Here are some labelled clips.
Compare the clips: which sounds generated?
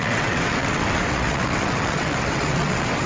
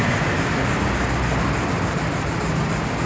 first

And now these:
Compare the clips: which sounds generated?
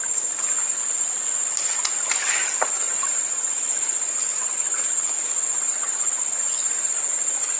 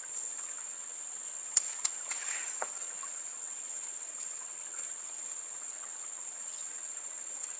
second